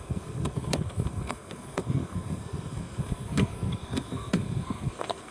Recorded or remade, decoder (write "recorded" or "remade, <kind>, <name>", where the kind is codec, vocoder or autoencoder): remade, codec, SNAC